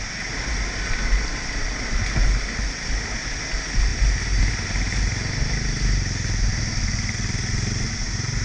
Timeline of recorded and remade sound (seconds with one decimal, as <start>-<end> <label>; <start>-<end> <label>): 0.0-8.4 recorded